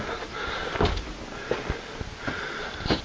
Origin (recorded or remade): recorded